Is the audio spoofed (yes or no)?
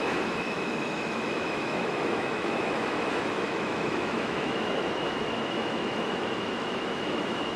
yes